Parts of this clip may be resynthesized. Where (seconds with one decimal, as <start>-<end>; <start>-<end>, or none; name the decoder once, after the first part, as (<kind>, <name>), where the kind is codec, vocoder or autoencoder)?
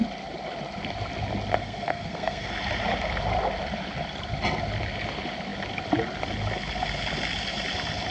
1.6-2.5 (codec, SNAC)